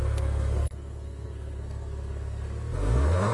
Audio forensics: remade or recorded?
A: remade